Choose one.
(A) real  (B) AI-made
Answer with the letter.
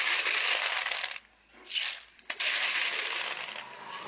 A